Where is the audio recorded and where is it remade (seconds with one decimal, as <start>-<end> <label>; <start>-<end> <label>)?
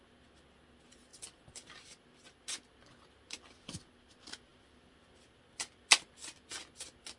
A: 0.0-7.2 recorded